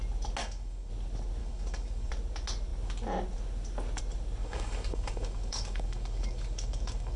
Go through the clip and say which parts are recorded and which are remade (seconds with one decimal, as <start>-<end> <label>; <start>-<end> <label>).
0.0-0.4 recorded; 0.4-0.9 remade; 0.9-1.4 recorded; 1.4-2.1 remade; 2.1-4.4 recorded; 4.4-7.2 remade

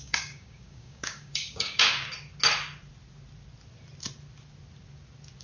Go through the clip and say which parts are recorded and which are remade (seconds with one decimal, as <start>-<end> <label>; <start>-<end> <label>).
0.0-2.1 remade; 2.1-5.4 recorded

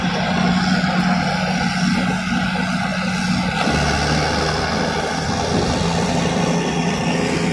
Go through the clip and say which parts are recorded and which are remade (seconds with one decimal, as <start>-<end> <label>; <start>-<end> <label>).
0.0-7.5 recorded

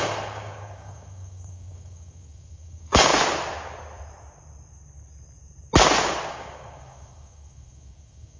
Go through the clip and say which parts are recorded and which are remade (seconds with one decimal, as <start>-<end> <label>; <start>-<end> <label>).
0.0-3.1 remade; 3.1-6.3 recorded; 6.3-8.4 remade

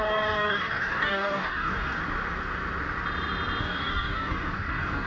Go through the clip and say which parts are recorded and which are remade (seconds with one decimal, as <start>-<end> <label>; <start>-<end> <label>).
0.0-2.0 remade; 2.0-3.6 recorded; 3.6-5.1 remade